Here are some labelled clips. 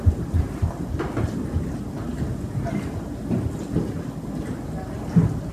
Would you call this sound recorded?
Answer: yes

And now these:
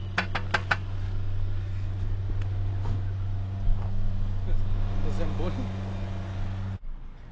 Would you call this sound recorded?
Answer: yes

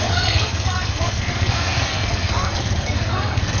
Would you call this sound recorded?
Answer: no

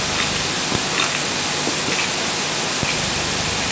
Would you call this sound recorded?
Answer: yes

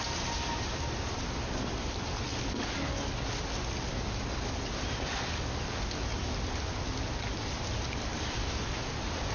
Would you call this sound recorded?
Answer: yes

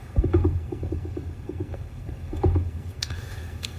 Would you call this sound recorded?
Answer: no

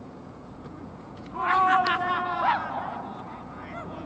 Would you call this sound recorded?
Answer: no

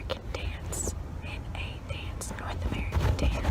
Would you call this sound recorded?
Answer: yes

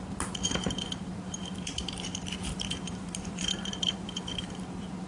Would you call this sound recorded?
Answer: no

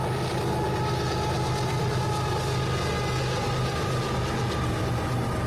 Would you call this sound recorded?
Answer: yes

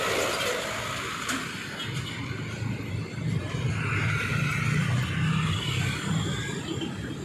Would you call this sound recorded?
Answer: yes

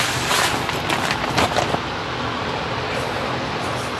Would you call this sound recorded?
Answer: yes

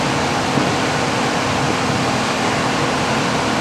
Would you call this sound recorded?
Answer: yes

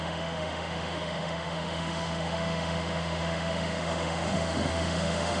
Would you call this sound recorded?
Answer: no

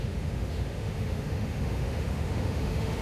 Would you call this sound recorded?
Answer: no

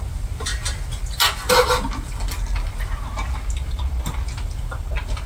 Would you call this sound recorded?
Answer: yes